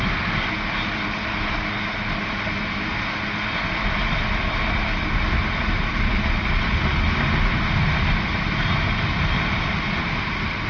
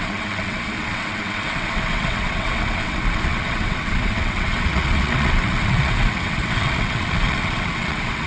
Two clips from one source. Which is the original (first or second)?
first